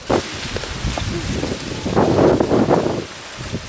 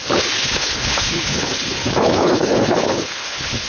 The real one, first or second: first